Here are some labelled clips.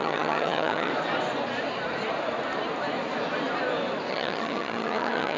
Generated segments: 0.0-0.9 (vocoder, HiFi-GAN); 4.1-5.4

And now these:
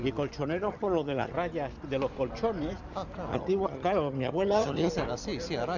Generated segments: 0.4-1.3 (vocoder, HiFi-GAN); 3.3-4.9